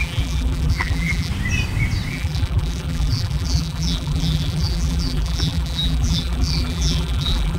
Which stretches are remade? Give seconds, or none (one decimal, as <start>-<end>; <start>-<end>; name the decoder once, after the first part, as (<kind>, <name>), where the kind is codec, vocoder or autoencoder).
0.0-1.3 (vocoder, BigVGAN v2); 2.1-7.6